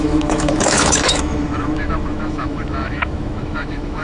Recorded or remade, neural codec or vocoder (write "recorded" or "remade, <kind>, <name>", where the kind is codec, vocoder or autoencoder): remade, autoencoder, DAC-VAE